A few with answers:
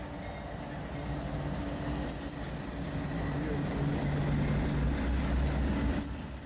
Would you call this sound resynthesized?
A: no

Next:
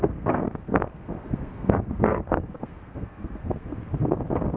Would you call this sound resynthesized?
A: yes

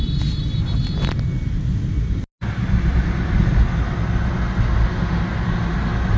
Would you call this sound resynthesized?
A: no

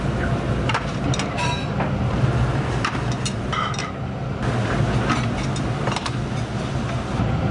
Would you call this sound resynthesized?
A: no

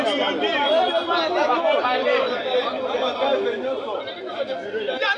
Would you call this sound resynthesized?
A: no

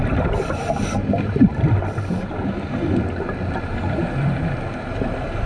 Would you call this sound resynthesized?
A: no